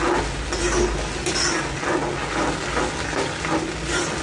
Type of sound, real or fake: real